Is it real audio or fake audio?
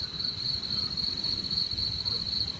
real